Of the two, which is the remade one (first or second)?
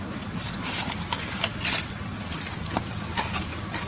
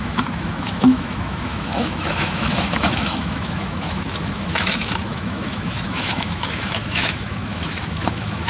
second